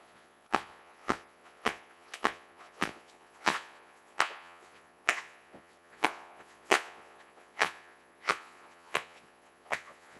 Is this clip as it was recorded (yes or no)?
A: no